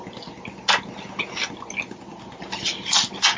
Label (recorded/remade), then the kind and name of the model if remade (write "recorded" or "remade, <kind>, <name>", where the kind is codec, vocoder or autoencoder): recorded